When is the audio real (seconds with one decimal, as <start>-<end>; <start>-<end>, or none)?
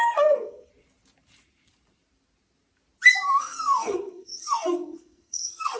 0.7-3.4